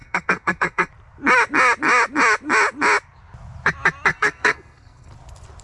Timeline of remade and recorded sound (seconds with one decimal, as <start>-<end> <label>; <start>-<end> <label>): 0.0-0.9 remade; 0.9-4.1 recorded; 4.1-5.1 remade; 5.1-5.6 recorded